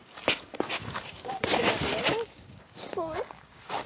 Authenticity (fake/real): fake